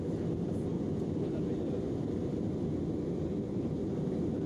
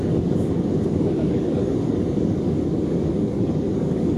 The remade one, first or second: second